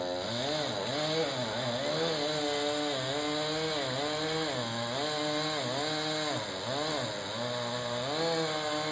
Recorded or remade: recorded